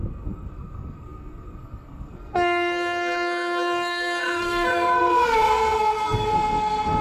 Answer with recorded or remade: remade